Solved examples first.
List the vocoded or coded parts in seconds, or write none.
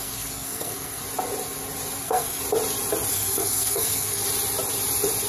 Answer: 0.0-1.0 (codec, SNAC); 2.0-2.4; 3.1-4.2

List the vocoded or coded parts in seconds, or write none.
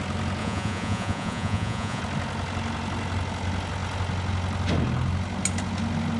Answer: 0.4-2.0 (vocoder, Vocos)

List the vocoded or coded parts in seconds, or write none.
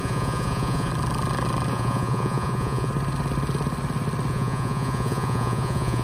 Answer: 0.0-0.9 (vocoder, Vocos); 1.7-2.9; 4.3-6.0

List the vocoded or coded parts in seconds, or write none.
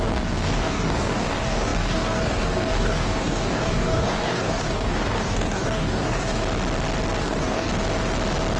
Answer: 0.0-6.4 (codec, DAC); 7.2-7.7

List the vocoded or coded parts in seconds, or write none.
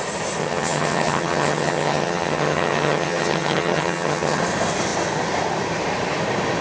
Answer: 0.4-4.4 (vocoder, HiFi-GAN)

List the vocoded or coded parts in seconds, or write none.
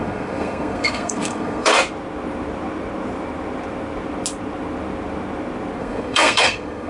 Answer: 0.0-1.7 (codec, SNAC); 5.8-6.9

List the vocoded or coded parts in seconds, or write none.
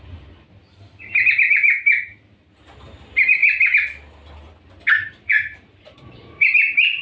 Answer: 5.0-6.4 (vocoder, Vocos)